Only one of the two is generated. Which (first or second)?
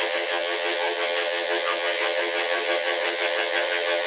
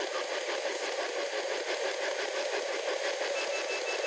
first